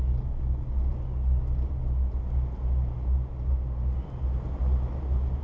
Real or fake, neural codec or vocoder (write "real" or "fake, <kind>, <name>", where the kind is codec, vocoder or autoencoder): real